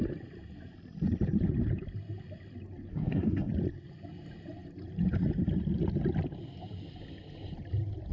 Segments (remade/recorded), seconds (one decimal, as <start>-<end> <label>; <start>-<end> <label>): 0.0-2.9 recorded; 2.9-3.5 remade; 3.5-8.1 recorded

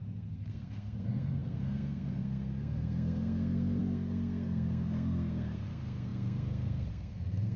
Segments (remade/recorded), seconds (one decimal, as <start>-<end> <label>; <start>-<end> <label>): 0.0-7.6 remade